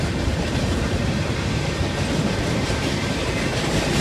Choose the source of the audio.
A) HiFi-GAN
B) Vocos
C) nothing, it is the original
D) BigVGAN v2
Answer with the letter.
D